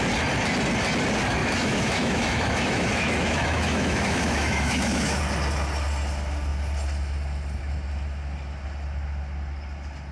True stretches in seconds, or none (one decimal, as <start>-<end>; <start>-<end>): 0.0-1.4; 5.2-10.1